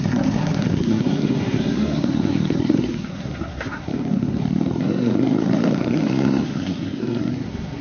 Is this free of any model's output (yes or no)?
no